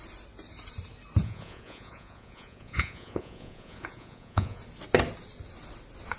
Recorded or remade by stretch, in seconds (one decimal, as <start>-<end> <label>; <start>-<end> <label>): 0.0-1.2 recorded; 1.2-4.6 remade; 4.6-6.2 recorded